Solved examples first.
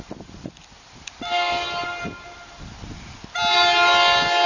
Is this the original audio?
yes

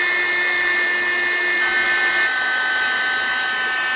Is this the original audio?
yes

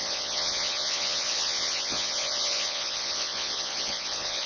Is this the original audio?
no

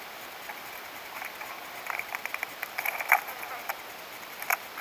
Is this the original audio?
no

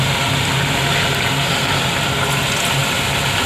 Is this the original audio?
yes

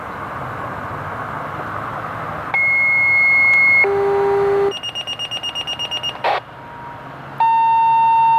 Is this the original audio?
yes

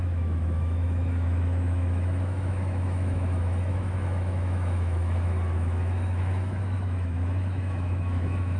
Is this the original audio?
no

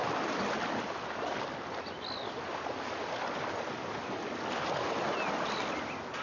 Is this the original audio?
yes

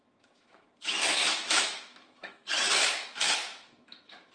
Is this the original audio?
no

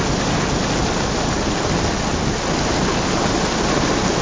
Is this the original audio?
yes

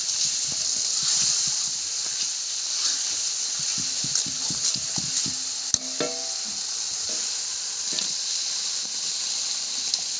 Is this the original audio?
yes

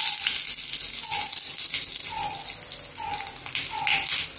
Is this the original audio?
yes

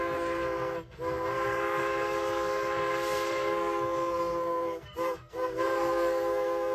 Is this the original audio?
no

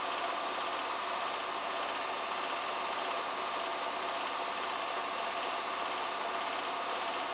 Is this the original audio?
yes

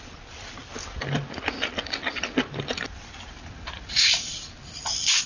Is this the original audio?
yes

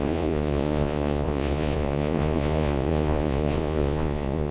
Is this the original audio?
no